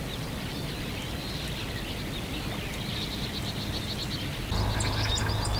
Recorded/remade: recorded